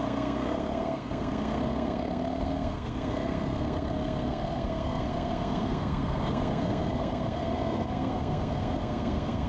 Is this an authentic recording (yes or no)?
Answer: no